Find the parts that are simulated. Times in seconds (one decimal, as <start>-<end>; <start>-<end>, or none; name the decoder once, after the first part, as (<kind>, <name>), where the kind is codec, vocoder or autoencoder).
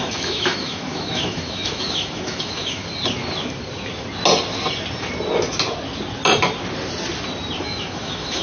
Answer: 0.0-2.8 (autoencoder, DAC-VAE); 7.6-8.4